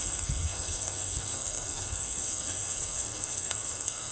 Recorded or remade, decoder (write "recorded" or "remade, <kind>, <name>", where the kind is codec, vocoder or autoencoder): remade, codec, SNAC